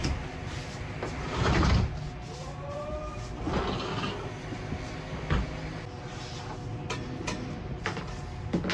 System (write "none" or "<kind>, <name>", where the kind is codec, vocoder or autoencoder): none